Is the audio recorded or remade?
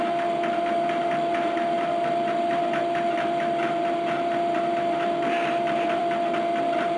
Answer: remade